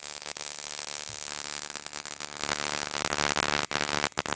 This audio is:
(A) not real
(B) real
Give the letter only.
B